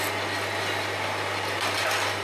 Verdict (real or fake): real